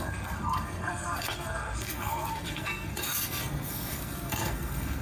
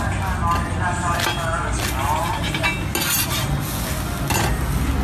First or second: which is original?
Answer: second